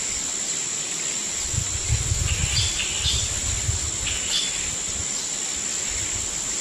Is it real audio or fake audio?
real